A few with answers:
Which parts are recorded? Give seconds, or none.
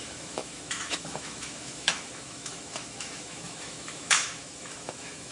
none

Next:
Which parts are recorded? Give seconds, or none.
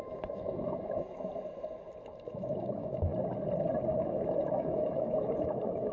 1.3-2.3; 3.1-3.9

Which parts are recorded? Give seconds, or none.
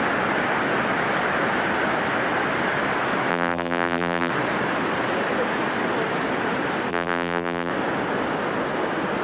0.0-3.3; 4.3-6.9; 7.7-9.2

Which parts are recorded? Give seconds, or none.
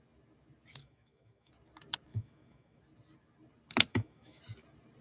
0.0-0.8; 1.5-2.1; 2.8-3.9; 4.4-5.0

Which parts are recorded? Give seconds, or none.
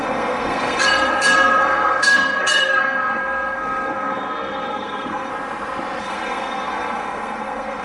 5.3-6.0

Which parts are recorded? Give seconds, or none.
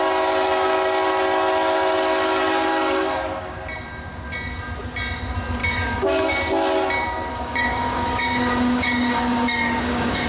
0.0-2.7; 3.6-5.6; 6.4-7.3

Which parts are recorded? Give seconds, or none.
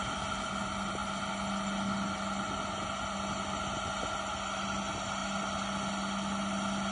0.0-6.9